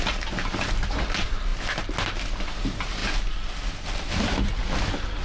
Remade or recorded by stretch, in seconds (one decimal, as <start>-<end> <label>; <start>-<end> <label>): 0.0-5.2 recorded